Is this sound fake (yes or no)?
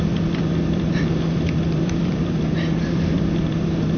yes